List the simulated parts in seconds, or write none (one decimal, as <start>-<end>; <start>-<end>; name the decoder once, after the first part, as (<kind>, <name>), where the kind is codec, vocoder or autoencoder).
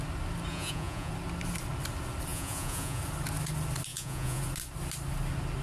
0.5-1.1 (vocoder, Vocos); 2.3-3.0; 3.9-4.4